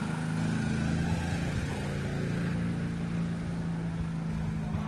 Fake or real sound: real